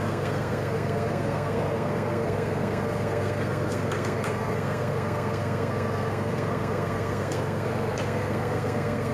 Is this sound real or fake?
fake